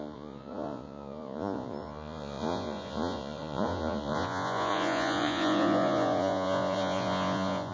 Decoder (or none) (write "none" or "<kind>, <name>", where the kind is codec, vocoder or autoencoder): vocoder, Vocos